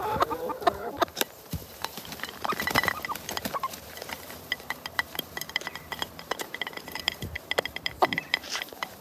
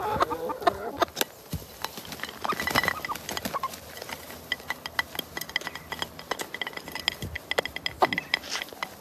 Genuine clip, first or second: second